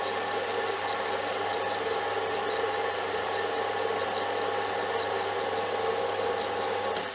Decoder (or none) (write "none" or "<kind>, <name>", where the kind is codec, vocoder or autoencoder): none